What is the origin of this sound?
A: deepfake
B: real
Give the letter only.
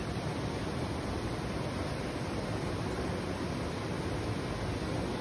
B